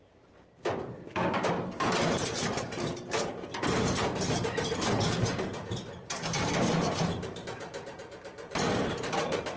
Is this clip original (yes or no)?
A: no